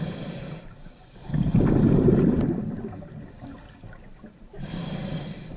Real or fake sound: fake